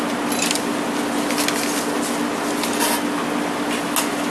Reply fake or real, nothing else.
real